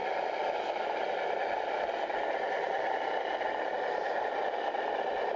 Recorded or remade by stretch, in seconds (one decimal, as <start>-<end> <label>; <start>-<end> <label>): 0.0-5.4 recorded